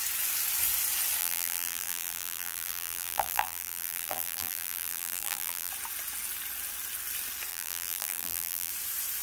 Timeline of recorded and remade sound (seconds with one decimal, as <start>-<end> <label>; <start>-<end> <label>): 0.0-1.2 recorded; 1.2-5.7 remade; 5.7-7.5 recorded; 7.5-8.7 remade; 8.7-9.2 recorded